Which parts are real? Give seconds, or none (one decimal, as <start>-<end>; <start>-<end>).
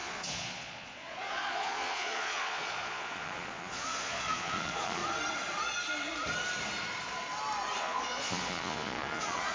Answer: 5.0-7.8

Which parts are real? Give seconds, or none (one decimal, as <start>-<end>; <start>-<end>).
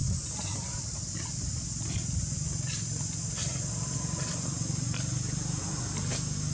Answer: 0.0-6.5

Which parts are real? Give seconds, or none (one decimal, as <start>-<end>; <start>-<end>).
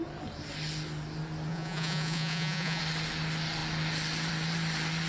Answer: 0.0-1.5; 2.8-5.1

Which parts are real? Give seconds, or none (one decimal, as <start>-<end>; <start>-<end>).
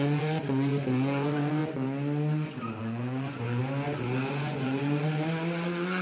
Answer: 1.6-2.8; 3.6-4.3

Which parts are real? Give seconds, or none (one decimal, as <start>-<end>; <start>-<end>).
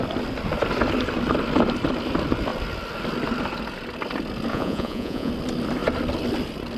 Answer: 0.0-4.5; 5.3-6.8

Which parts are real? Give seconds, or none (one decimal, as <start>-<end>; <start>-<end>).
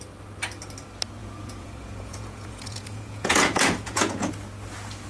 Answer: 0.0-1.2; 4.3-5.1